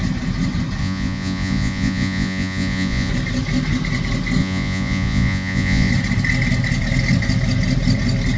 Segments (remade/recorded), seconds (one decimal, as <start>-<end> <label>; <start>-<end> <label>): 0.0-0.8 recorded; 0.8-3.1 remade; 3.1-4.4 recorded; 4.4-5.9 remade; 5.9-8.4 recorded